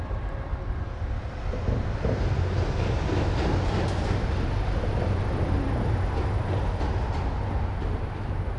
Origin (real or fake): real